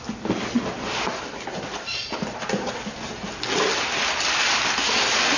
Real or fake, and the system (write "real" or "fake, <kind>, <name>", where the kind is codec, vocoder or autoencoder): real